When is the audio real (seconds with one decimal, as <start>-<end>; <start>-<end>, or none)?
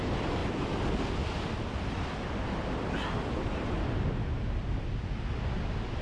0.0-6.0